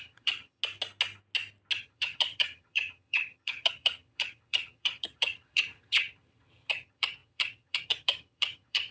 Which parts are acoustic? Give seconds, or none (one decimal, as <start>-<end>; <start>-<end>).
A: 0.6-1.8